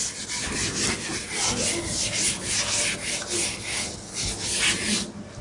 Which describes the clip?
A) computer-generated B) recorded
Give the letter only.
B